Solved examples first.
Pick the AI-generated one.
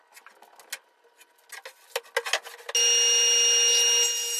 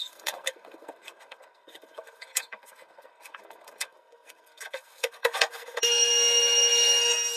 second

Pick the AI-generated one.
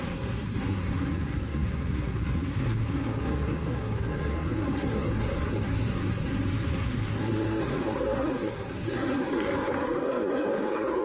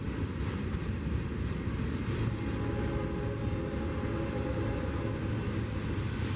first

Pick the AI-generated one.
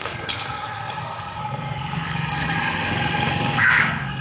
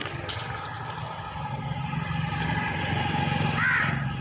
first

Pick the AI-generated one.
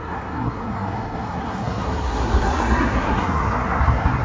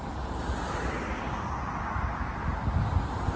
first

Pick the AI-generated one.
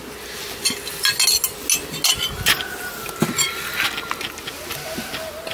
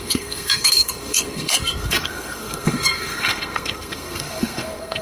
second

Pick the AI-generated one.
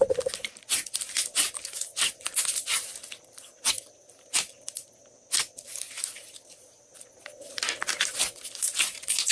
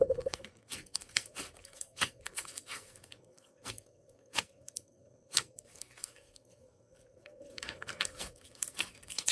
second